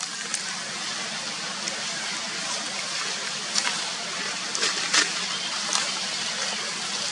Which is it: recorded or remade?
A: recorded